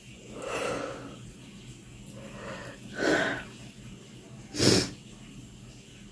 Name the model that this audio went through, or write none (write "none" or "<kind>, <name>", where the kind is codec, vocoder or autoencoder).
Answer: none